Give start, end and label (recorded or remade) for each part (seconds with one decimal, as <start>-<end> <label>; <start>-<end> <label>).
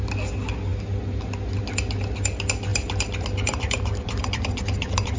0.0-2.7 recorded; 2.7-5.2 remade